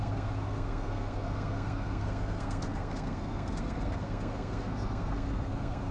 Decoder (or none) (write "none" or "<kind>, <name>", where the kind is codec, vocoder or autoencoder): codec, SNAC